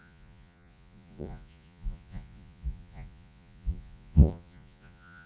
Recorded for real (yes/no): no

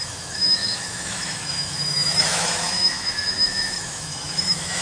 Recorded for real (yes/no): no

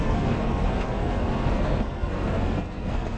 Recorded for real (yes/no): no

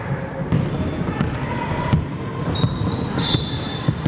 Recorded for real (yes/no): yes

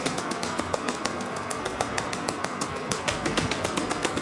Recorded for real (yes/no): no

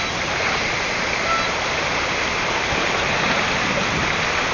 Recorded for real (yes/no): yes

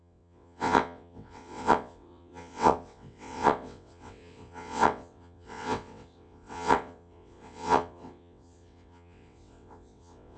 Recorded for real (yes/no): no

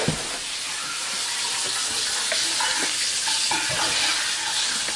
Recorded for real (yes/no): yes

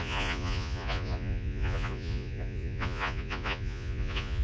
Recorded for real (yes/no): no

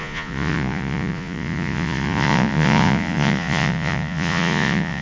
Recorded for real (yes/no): no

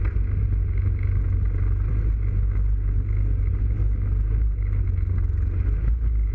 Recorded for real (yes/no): yes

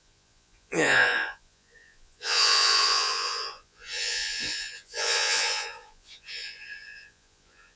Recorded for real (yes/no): no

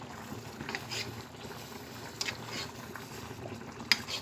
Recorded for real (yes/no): yes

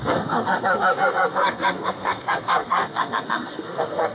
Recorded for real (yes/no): no